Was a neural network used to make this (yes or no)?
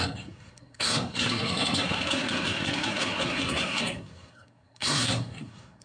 yes